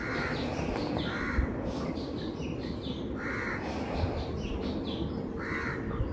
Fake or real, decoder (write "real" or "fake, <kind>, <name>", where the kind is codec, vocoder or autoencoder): real